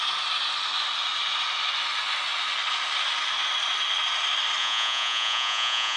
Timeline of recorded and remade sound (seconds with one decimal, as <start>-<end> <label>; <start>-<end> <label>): 0.0-4.6 recorded; 4.6-6.0 remade